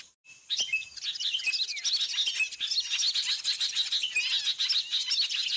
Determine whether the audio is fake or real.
real